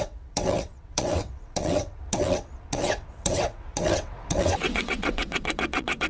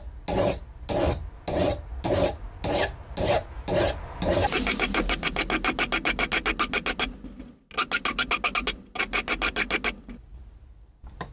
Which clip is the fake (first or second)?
first